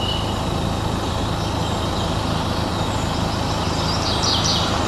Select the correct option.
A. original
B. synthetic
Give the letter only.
A